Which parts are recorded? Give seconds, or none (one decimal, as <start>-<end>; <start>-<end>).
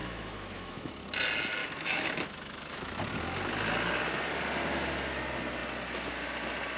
0.9-1.6; 3.0-6.8